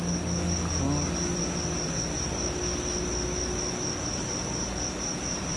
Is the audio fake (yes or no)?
no